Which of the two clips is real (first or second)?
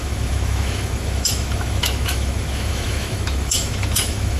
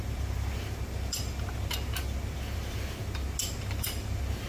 second